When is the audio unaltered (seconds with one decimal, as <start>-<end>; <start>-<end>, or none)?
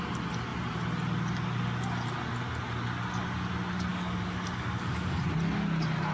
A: 0.0-3.9; 5.2-6.1